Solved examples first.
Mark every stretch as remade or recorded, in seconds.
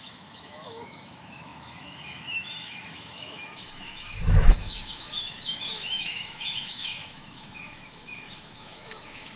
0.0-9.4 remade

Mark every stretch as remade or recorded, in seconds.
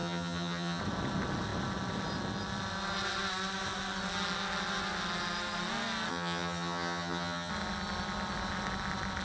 0.0-0.8 remade; 0.8-6.1 recorded; 6.1-7.5 remade; 7.5-9.2 recorded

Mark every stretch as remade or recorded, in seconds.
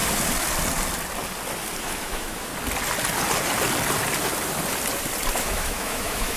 0.0-1.8 recorded; 1.8-2.5 remade; 2.5-5.4 recorded; 5.4-6.4 remade